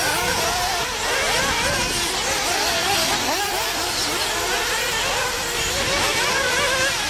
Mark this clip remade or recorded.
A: recorded